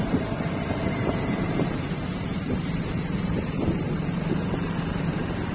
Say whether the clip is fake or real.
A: fake